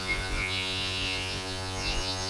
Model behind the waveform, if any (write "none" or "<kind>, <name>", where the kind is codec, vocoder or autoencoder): vocoder, Vocos